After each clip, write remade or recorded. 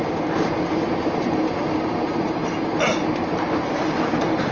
recorded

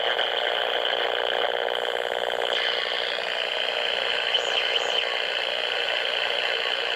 recorded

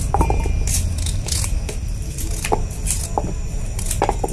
recorded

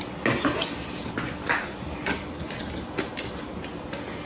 recorded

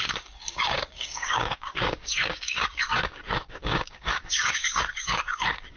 remade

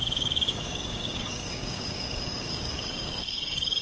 remade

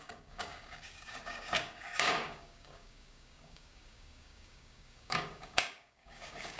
remade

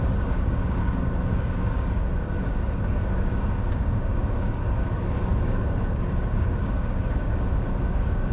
remade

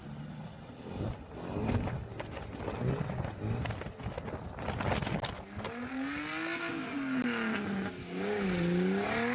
recorded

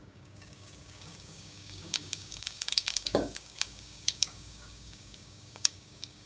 remade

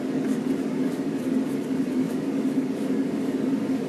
remade